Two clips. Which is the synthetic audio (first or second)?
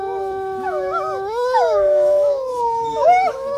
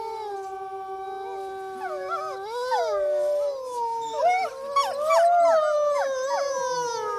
first